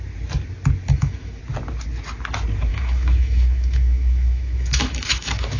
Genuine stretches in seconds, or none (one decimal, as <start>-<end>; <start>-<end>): 0.0-0.9; 1.4-2.7